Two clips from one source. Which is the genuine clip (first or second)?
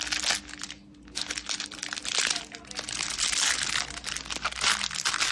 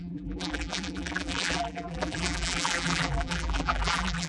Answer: first